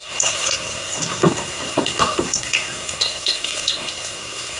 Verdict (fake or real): fake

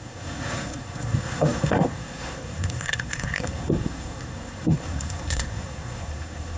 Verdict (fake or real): fake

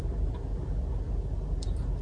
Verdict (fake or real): real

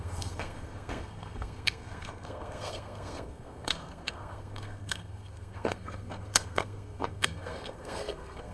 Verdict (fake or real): fake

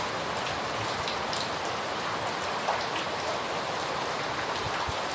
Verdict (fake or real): real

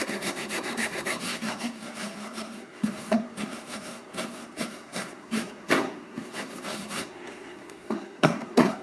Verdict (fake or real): fake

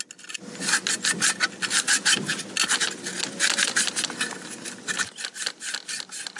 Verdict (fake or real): real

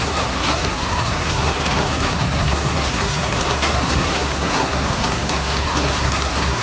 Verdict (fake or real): fake